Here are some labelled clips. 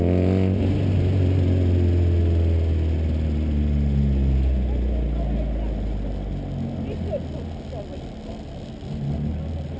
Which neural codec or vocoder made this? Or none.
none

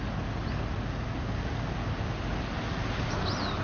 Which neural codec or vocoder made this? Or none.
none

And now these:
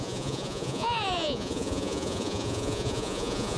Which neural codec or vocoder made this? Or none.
vocoder, Vocos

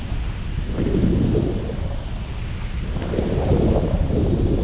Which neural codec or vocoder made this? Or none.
none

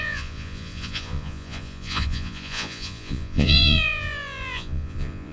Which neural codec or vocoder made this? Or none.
vocoder, Vocos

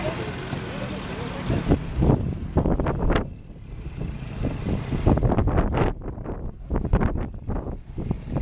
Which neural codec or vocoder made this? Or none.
none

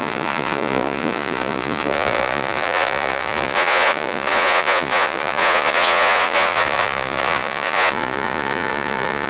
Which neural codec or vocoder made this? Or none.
vocoder, Vocos